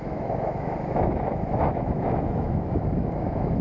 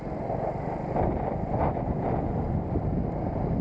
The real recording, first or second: second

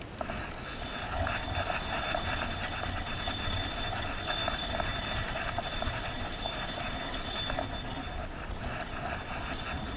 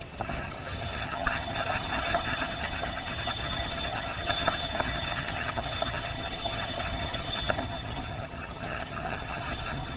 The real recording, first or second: first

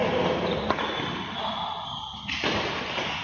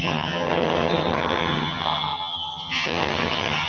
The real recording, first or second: first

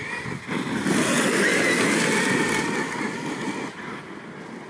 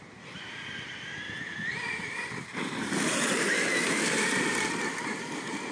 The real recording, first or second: first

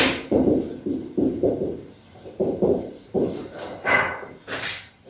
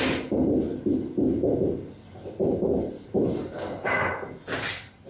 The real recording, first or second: second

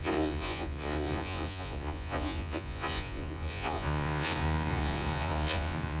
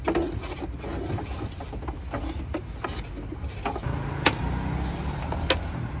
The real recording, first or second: second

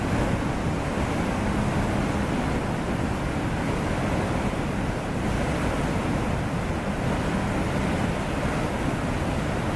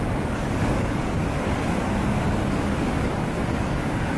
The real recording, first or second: first